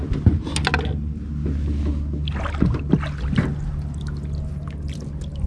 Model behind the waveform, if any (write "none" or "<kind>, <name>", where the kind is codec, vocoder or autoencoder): none